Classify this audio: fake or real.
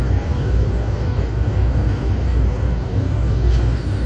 fake